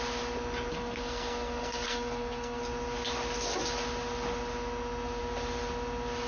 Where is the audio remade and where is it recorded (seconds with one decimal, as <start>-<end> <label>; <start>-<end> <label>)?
0.0-0.7 recorded; 0.7-2.6 remade; 2.6-6.3 recorded